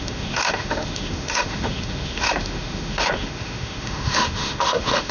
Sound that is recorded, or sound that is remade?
remade